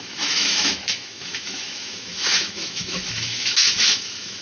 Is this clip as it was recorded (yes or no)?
no